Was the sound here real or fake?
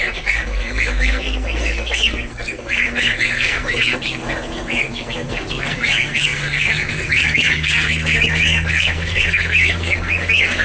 fake